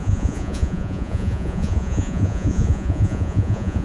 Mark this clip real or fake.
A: fake